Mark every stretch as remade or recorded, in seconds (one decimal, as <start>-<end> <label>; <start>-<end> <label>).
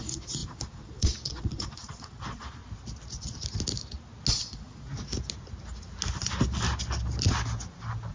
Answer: 0.0-2.6 remade; 2.6-4.3 recorded; 4.3-4.9 remade; 4.9-8.1 recorded